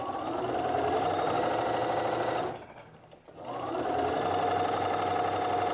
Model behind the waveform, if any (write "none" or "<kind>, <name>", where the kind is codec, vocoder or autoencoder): none